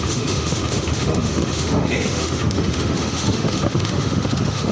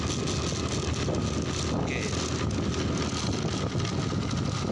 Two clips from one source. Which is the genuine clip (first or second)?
second